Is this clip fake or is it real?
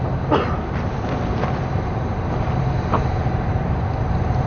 real